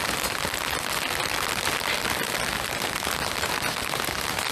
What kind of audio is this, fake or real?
real